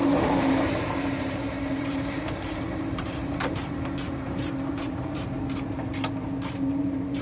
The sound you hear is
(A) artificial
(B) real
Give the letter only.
A